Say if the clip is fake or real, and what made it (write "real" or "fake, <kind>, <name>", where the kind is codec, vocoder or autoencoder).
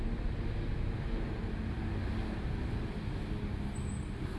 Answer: real